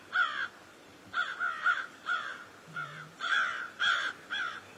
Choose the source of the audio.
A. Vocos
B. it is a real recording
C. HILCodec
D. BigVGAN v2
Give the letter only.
D